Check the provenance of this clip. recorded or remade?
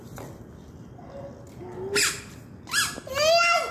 recorded